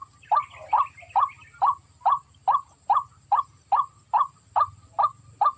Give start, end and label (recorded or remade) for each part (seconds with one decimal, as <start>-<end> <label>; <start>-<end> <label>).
0.0-5.6 recorded